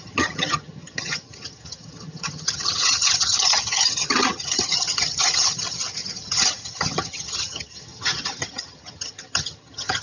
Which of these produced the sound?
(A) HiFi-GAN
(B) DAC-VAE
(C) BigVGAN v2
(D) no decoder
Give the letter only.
A